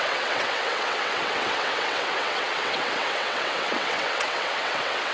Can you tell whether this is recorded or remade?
remade